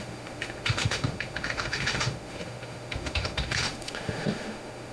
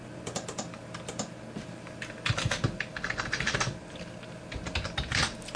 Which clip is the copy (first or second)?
first